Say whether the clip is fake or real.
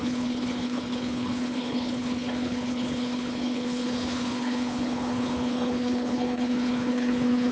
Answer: fake